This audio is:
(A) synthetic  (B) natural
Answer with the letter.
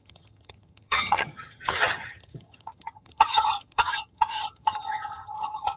A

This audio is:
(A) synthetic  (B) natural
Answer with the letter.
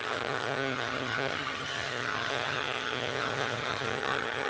A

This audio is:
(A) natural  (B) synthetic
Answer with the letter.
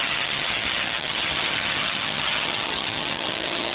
B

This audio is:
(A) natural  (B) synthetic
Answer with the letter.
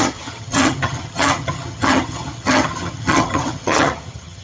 B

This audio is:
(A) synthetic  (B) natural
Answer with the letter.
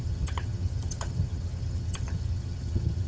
A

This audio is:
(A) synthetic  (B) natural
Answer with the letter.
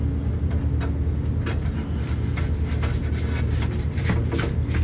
B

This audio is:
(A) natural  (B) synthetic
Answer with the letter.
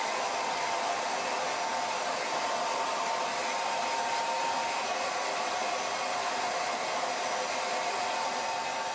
A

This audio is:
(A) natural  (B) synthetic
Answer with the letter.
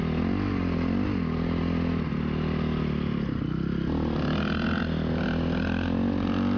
A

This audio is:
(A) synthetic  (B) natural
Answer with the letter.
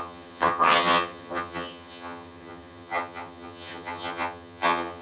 A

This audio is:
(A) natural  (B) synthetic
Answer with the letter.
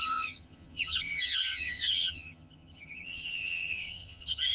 B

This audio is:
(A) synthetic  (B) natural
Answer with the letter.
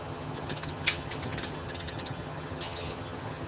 A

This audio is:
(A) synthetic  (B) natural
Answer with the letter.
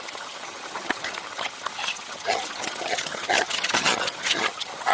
A